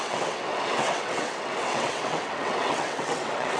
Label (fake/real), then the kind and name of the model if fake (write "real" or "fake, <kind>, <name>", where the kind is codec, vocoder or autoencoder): fake, vocoder, WaveNeXt